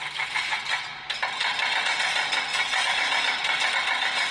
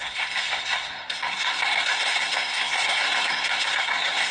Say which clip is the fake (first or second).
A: second